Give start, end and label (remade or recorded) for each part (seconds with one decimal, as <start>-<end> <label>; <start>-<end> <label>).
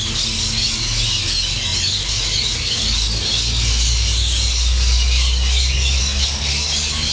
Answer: 0.0-7.1 remade